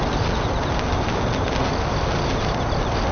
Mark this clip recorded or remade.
recorded